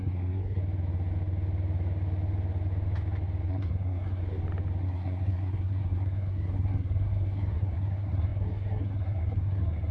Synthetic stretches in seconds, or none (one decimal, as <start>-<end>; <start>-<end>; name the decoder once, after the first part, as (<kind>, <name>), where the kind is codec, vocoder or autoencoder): 0.0-0.6 (codec, SNAC); 3.5-4.2; 4.8-9.9